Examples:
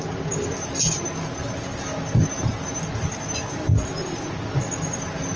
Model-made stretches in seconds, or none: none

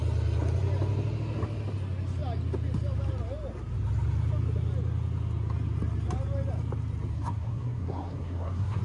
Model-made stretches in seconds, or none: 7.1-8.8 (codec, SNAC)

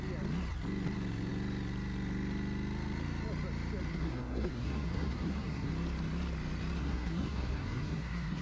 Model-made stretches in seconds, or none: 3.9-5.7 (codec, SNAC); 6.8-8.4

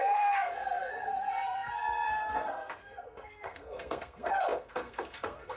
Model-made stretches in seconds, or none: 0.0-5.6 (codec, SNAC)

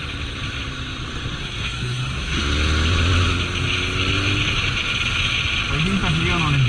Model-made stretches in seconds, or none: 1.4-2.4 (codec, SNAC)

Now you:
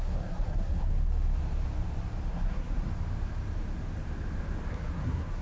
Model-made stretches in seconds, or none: 0.0-0.9 (codec, SNAC); 2.3-2.9; 4.7-5.4